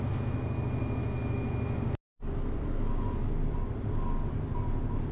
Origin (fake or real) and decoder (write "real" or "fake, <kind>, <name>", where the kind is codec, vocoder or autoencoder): real